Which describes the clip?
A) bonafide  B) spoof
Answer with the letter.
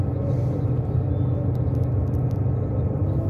A